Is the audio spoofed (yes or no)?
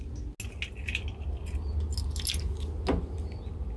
no